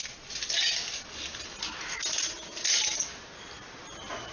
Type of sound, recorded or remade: recorded